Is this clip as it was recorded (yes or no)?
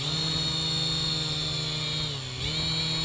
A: yes